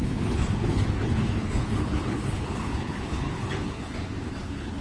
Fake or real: fake